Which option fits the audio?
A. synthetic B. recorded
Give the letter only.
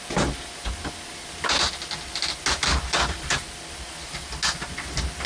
B